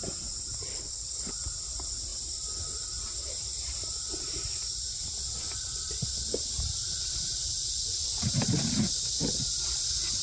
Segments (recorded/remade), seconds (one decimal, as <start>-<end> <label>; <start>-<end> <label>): 0.0-0.7 recorded; 0.7-1.3 remade; 1.3-10.2 recorded